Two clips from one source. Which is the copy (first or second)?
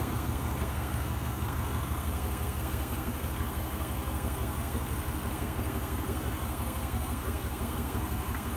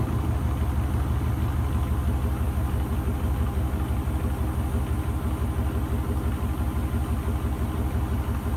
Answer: first